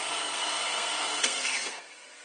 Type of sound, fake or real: fake